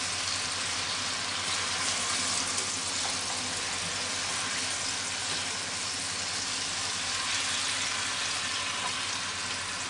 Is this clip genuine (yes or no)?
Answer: yes